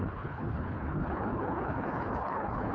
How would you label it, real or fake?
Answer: fake